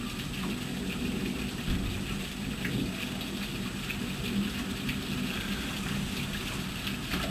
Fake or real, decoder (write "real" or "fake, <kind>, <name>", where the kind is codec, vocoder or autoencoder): real